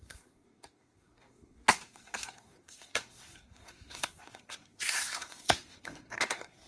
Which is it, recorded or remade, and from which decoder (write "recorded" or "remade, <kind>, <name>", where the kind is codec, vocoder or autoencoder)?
remade, codec, SNAC